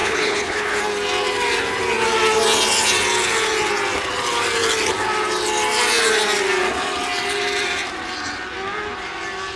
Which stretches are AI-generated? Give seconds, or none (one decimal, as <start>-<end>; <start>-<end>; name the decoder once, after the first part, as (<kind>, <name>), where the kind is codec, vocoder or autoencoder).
0.0-0.8 (codec, HILCodec)